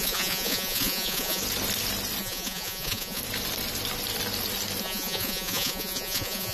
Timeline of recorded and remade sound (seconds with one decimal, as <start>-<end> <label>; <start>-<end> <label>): 0.0-1.4 remade; 1.4-2.2 recorded; 2.2-3.2 remade; 3.2-4.8 recorded; 4.8-6.5 remade